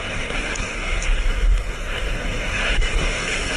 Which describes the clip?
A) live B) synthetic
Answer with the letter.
B